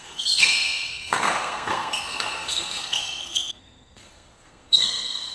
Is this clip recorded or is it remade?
remade